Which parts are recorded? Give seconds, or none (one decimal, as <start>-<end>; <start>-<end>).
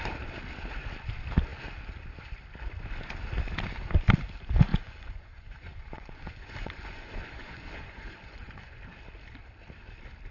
0.0-4.7; 8.8-10.3